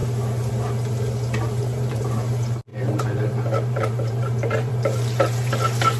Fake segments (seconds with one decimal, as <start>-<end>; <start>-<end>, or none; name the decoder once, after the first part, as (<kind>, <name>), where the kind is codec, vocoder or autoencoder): 1.4-2.3 (vocoder, BigVGAN v2); 2.7-5.5